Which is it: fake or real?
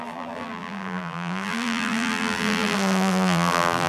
fake